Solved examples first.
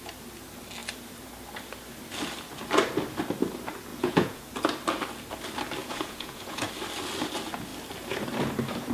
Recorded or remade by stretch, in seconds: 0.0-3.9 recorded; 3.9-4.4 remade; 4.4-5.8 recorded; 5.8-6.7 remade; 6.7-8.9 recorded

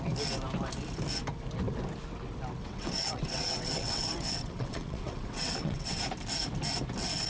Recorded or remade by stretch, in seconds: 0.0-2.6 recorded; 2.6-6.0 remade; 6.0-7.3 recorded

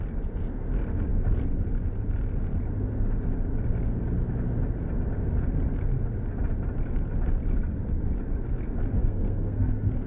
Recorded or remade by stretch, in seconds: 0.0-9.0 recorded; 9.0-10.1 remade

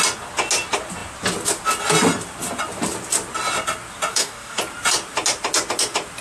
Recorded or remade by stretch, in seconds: 0.0-4.1 recorded; 4.1-4.6 remade; 4.6-6.2 recorded

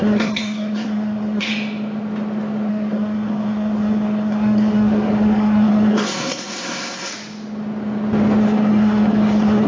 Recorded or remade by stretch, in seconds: 0.0-1.5 remade; 1.5-2.7 recorded; 2.7-7.1 remade; 7.1-8.4 recorded; 8.4-9.7 remade

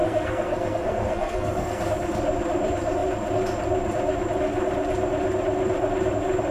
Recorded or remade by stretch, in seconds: 0.0-1.8 remade; 1.8-6.5 recorded

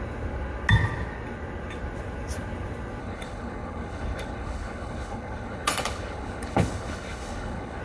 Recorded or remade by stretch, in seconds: 0.0-3.0 recorded; 3.0-7.8 remade